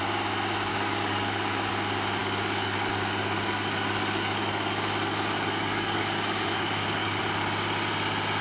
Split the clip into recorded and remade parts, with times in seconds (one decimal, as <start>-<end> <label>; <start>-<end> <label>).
0.0-0.7 recorded; 0.7-1.7 remade; 1.7-2.2 recorded; 2.2-7.2 remade; 7.2-8.4 recorded